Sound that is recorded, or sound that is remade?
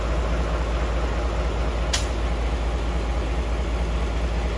recorded